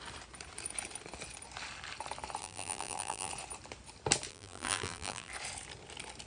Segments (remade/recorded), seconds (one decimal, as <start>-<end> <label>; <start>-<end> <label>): 0.0-2.4 recorded; 2.4-3.3 remade; 3.3-4.3 recorded; 4.3-5.3 remade; 5.3-6.3 recorded